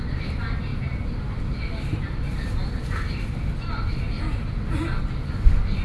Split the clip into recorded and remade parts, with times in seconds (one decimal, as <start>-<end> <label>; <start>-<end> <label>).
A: 0.0-5.8 recorded